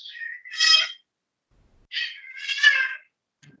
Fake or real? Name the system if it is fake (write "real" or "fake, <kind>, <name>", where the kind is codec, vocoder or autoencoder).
real